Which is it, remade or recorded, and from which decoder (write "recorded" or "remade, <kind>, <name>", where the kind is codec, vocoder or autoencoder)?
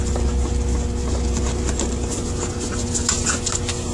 recorded